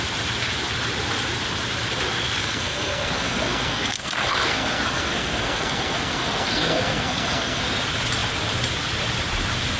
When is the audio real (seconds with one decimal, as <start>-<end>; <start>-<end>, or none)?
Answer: 0.0-2.4; 7.6-9.8